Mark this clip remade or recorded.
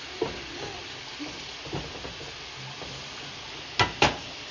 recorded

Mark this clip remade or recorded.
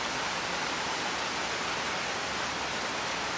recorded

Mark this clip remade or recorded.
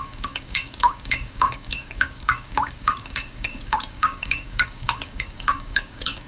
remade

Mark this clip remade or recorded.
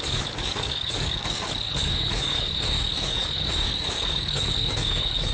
remade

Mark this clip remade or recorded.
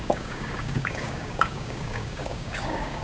remade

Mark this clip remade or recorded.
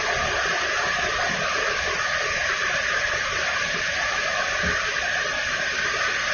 recorded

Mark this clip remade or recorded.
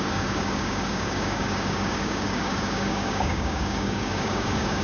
remade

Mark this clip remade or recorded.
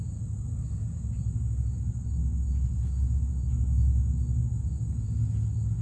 recorded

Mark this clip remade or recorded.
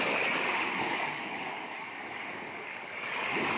remade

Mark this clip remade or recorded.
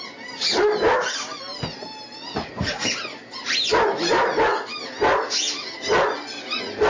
recorded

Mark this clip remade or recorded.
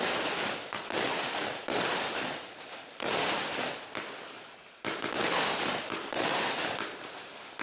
recorded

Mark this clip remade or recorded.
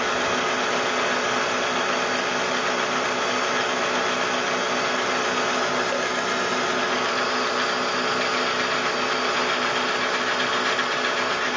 recorded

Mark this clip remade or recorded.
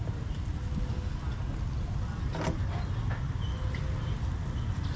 recorded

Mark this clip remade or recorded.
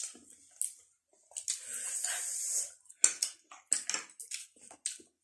recorded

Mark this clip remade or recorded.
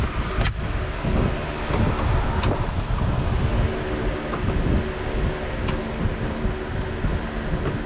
recorded